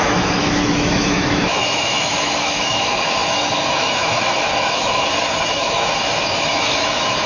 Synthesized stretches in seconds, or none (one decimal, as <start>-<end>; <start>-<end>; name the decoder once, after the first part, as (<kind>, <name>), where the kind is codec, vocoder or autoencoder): 0.0-7.3 (autoencoder, DAC-VAE)